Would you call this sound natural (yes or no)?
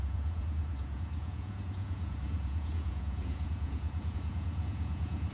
no